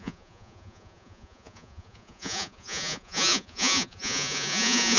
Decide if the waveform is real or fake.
fake